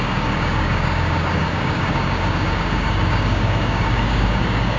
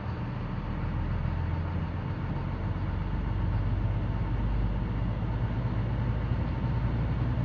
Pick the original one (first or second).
second